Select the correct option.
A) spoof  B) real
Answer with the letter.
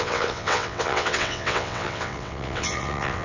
A